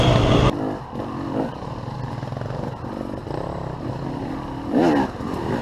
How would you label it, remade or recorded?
recorded